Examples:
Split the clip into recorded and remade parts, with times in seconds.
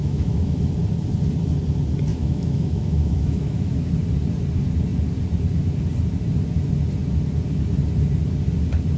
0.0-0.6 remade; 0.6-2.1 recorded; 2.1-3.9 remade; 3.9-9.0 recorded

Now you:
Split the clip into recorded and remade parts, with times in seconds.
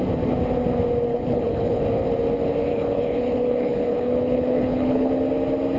0.0-1.1 recorded; 1.1-1.8 remade; 1.8-2.7 recorded; 2.7-5.1 remade; 5.1-5.8 recorded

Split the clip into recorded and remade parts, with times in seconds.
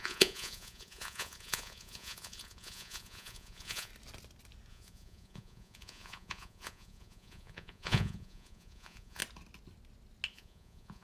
0.0-3.9 remade; 3.9-4.7 recorded; 4.7-9.2 remade; 9.2-10.3 recorded; 10.3-11.0 remade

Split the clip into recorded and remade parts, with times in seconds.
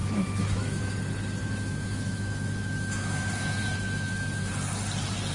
0.0-0.9 remade; 0.9-1.4 recorded; 1.4-4.5 remade; 4.5-5.3 recorded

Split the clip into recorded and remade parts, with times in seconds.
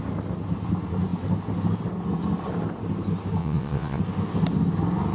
0.0-3.4 recorded; 3.4-4.0 remade; 4.0-5.1 recorded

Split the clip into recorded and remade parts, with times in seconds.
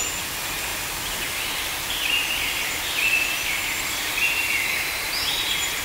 0.0-5.8 recorded